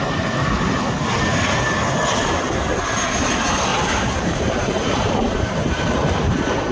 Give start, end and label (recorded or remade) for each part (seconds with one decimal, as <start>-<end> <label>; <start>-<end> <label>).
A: 0.0-3.7 recorded; 3.7-6.7 remade